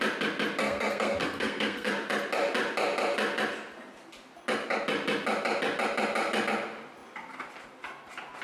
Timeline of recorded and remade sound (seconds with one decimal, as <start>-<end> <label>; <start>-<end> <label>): 0.0-0.6 recorded; 0.6-1.9 remade; 1.9-8.4 recorded